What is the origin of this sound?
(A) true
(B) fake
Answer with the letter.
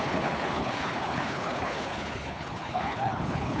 B